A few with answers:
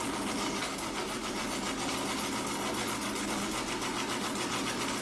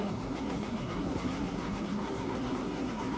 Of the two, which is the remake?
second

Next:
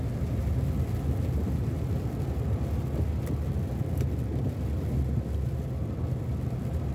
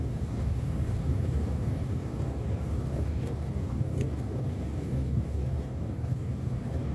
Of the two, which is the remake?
second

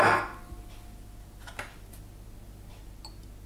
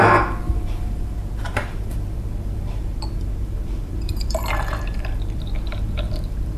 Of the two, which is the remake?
second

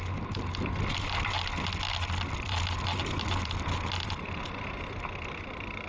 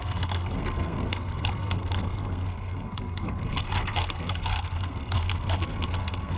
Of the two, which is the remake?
second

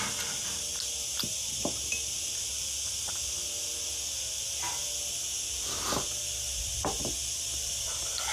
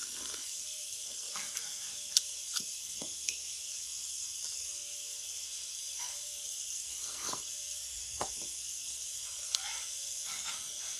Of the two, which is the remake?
second